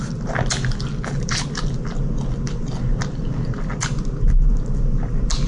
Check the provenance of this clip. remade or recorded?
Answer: recorded